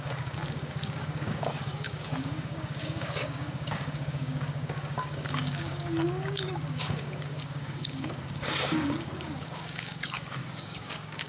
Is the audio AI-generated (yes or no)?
yes